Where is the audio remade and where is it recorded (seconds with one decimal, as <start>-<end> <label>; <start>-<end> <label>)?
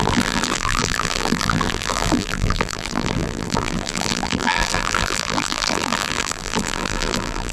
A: 0.0-7.5 remade